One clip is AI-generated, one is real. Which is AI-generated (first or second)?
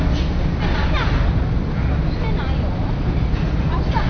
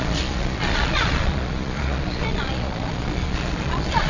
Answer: second